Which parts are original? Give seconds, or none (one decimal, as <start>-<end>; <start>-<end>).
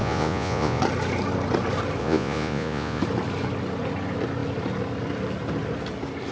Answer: 0.8-2.0; 3.0-6.3